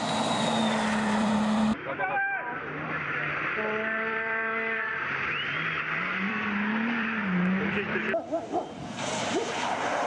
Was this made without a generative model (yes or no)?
no